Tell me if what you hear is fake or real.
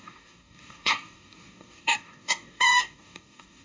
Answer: fake